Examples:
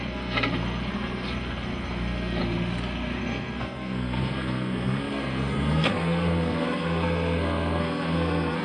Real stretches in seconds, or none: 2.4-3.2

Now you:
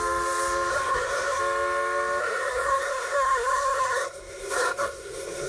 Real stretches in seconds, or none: 0.0-0.7; 1.4-2.2

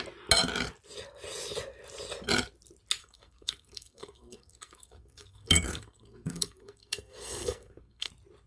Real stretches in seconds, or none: 0.0-3.0; 8.1-8.5

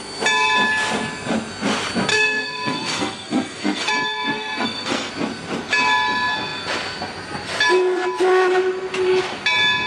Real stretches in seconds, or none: 0.0-2.1; 3.9-4.3; 5.1-9.9

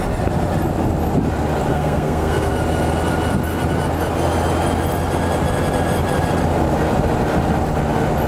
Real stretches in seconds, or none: 0.0-1.7; 2.5-8.3

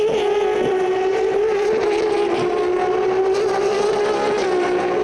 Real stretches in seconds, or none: 0.0-5.0